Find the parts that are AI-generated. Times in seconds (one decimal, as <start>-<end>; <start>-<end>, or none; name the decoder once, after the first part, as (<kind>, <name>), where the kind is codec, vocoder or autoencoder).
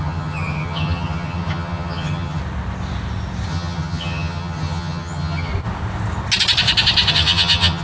0.0-2.4 (vocoder, HiFi-GAN); 3.5-5.5; 7.1-7.8